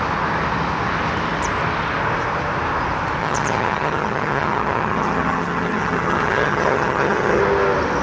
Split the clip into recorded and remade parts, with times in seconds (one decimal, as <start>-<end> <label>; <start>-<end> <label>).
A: 0.0-3.2 recorded; 3.2-7.4 remade; 7.4-8.0 recorded